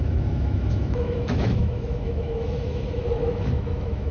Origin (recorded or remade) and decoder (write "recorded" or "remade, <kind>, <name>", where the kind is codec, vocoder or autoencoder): remade, autoencoder, DAC-VAE